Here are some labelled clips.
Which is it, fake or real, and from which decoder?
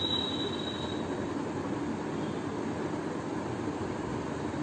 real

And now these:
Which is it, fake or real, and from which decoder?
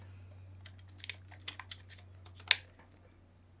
real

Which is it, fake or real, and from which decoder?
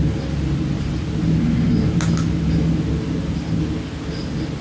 real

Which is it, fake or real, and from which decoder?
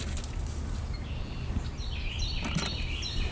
real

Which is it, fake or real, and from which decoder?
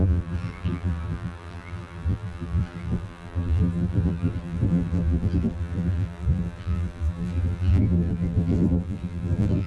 fake, vocoder, BigVGAN v2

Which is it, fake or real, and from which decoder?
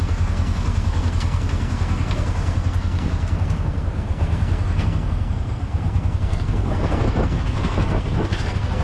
fake, codec, SNAC